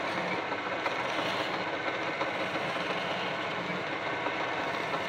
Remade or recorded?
recorded